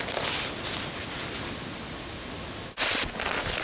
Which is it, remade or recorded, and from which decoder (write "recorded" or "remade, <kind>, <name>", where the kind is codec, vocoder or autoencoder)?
recorded